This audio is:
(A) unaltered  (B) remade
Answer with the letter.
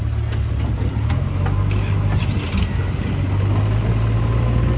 A